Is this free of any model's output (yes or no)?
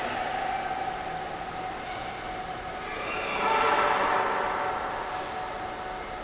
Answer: yes